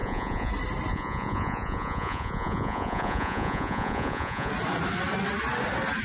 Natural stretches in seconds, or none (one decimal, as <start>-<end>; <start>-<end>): 0.5-0.9; 4.5-6.0

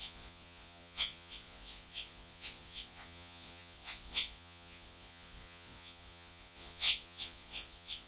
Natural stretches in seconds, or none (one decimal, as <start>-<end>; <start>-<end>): none

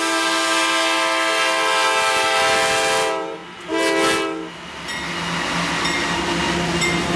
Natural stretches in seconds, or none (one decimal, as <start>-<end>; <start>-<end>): 0.0-7.2

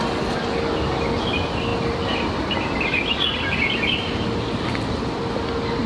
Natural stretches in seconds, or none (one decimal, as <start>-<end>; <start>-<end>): 0.0-5.9